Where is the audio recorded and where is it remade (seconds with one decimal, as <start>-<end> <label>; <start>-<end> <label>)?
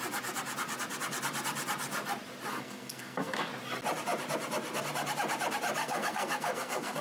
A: 0.0-2.5 recorded; 2.5-3.5 remade; 3.5-5.8 recorded; 5.8-7.0 remade